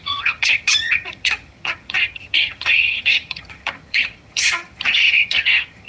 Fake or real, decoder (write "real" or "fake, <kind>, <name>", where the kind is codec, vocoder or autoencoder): fake, vocoder, HiFi-GAN